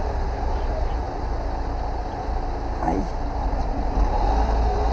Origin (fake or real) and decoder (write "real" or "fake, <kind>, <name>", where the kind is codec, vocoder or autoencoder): real